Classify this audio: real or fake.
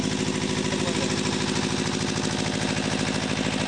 real